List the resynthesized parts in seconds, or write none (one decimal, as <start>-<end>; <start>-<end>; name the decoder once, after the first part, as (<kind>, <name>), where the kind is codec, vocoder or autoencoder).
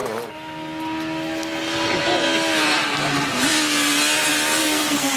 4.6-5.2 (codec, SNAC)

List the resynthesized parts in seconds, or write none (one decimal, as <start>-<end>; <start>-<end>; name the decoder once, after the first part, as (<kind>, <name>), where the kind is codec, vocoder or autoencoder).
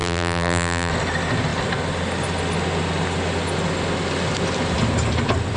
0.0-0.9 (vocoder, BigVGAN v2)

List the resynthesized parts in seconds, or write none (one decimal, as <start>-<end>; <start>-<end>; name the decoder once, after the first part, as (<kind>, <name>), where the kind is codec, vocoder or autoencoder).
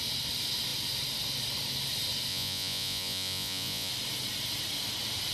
2.3-3.9 (vocoder, Vocos)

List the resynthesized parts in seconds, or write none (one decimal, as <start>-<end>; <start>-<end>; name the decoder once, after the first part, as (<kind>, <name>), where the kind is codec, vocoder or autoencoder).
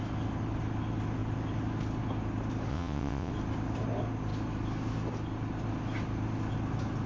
2.7-3.3 (vocoder, WaveNeXt)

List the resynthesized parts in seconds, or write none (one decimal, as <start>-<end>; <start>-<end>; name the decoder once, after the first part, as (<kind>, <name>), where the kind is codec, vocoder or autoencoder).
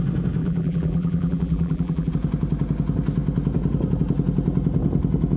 0.4-2.1 (vocoder, BigVGAN v2)